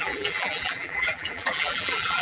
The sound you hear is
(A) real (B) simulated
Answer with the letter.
B